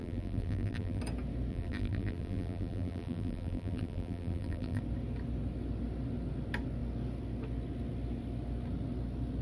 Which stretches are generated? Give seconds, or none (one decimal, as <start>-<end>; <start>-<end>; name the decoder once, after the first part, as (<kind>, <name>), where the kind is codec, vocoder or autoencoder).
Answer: 0.0-1.0 (vocoder, BigVGAN v2); 1.5-4.8